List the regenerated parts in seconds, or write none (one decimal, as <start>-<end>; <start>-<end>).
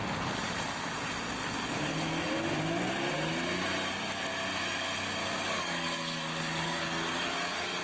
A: 5.2-7.8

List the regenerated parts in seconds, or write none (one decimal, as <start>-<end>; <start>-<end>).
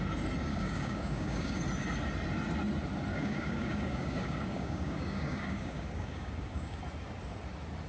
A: 0.5-1.6; 3.1-6.8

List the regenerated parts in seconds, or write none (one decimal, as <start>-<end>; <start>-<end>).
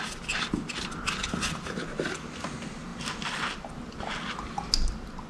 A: none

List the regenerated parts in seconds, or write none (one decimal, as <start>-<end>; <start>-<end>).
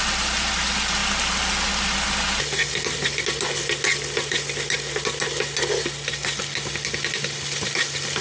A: none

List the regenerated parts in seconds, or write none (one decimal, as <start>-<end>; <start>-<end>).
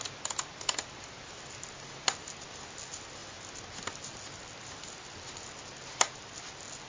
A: none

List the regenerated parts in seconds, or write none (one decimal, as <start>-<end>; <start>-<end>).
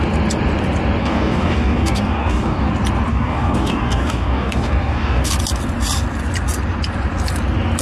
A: 1.0-2.7; 3.1-5.3